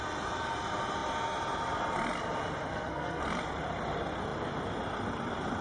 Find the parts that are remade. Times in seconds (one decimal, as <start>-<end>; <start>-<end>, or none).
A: 2.7-3.2